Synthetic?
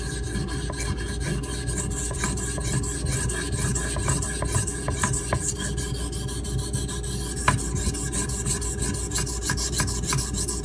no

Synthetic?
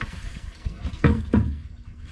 yes